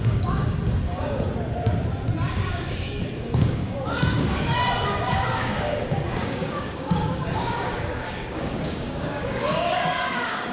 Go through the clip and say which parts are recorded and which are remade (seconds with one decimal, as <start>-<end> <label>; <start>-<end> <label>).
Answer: 0.0-1.3 remade; 1.3-2.3 recorded; 2.3-10.5 remade